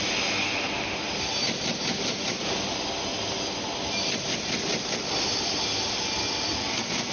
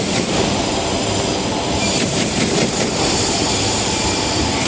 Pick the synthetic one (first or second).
second